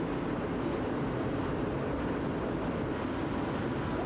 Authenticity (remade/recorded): recorded